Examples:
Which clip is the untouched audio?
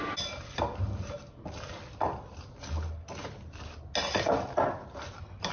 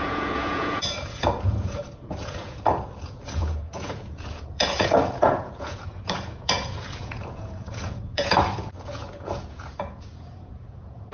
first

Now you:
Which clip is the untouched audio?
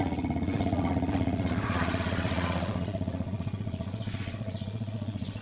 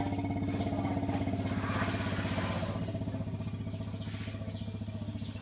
second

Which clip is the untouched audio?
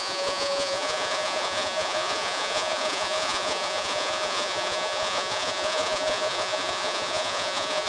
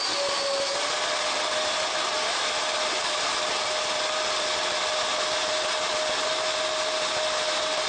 second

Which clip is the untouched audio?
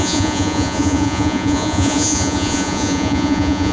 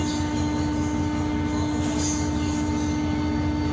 second